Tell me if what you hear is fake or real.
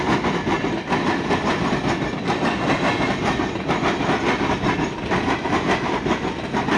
fake